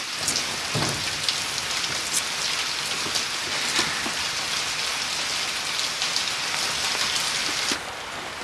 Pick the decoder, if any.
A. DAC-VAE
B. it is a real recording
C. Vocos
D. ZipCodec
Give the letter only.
B